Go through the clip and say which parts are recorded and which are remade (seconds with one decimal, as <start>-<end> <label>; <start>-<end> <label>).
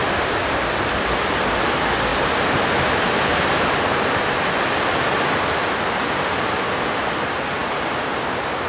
0.0-8.7 recorded